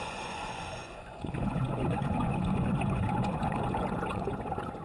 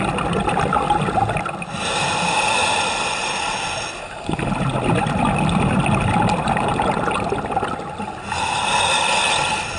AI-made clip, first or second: first